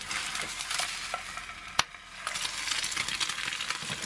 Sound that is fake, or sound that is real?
real